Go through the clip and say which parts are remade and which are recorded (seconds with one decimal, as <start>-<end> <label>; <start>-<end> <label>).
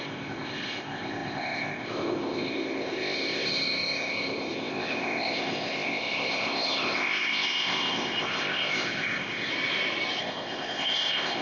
0.0-9.5 remade; 9.5-10.2 recorded; 10.2-11.4 remade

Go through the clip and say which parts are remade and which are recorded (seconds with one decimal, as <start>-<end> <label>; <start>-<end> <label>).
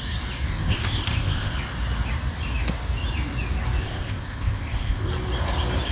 0.0-0.5 recorded; 0.5-1.5 remade; 1.5-3.8 recorded; 3.8-5.1 remade; 5.1-5.9 recorded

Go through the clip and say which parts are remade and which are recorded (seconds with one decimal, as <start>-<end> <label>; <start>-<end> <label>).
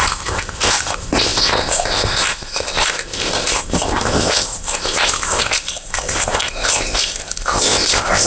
0.0-8.3 remade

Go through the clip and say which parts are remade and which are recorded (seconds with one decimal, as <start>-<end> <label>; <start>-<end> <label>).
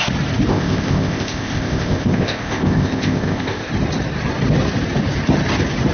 0.0-0.5 recorded; 0.5-3.7 remade; 3.7-5.9 recorded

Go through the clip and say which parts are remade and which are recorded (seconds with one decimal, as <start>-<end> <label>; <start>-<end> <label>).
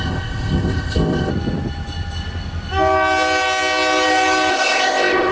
0.0-1.3 remade; 1.3-4.5 recorded; 4.5-5.3 remade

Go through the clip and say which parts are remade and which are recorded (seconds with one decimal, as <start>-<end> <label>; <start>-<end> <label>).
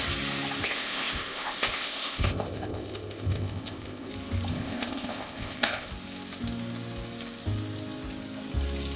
0.0-0.6 recorded; 0.6-4.1 remade; 4.1-4.5 recorded; 4.5-5.9 remade; 5.9-9.0 recorded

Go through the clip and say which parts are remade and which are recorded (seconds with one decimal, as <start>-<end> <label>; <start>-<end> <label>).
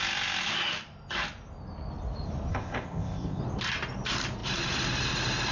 0.0-2.5 recorded; 2.5-3.4 remade; 3.4-5.5 recorded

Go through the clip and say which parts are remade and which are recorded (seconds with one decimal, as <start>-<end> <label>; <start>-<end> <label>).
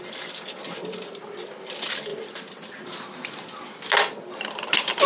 0.0-5.1 recorded